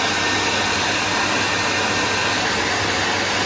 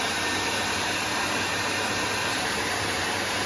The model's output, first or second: second